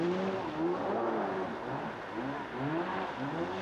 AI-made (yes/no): no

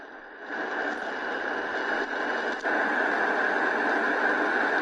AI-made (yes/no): no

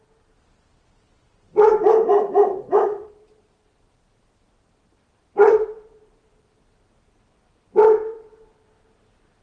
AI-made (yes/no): yes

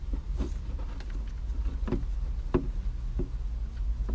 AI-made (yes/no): no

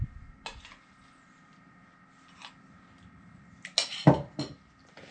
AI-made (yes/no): no